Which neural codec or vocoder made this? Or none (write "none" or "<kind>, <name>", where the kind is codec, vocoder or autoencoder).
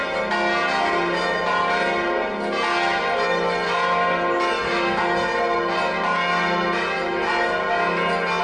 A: none